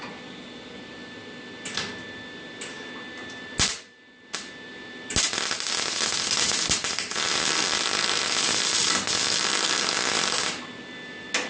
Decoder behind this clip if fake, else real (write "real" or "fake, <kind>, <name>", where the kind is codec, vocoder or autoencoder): real